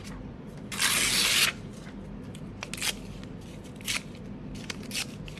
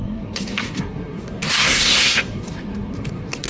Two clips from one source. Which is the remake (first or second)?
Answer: second